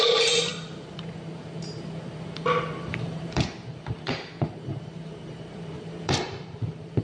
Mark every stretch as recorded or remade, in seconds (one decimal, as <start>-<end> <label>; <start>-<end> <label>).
0.0-7.0 remade